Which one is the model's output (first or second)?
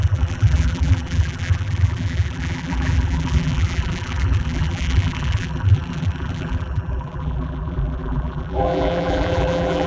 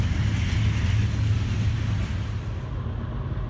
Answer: first